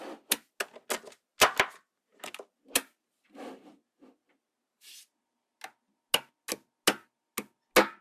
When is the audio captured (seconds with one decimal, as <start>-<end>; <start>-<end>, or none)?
0.0-8.0